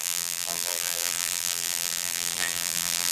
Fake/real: fake